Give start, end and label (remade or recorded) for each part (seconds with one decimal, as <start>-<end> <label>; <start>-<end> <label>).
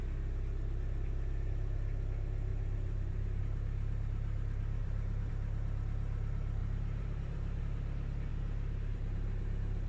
0.0-2.5 recorded; 2.5-3.4 remade; 3.4-4.8 recorded; 4.8-5.3 remade; 5.3-6.6 recorded; 6.6-7.6 remade; 7.6-8.3 recorded; 8.3-9.9 remade